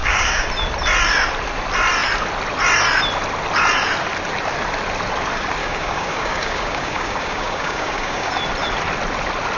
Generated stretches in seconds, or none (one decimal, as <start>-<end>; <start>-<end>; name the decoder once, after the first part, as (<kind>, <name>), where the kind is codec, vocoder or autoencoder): 0.0-0.5 (codec, DAC); 5.6-8.3